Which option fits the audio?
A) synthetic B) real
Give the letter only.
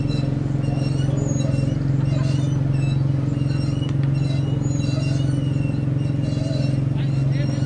B